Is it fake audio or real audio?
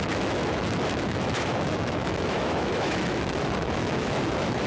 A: fake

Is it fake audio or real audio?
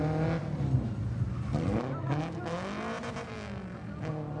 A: real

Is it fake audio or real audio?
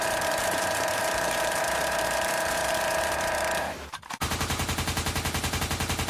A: fake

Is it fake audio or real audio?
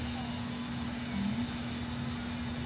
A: real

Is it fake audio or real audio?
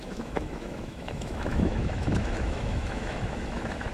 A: fake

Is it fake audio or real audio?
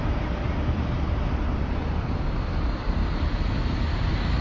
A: real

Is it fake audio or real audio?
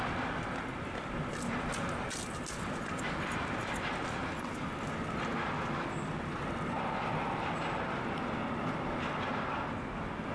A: real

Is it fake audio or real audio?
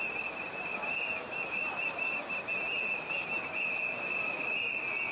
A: real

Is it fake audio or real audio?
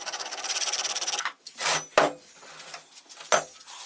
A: real